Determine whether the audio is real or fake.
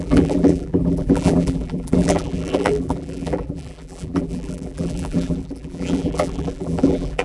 fake